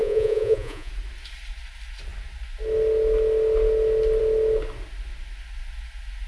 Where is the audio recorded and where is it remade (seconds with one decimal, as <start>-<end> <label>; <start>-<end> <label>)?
0.0-0.9 remade; 0.9-6.3 recorded